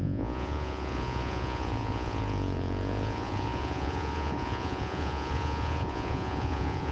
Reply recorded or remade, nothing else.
remade